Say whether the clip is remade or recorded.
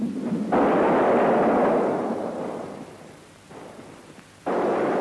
recorded